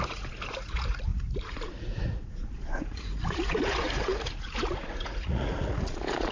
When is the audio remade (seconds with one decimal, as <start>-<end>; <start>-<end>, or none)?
0.0-6.3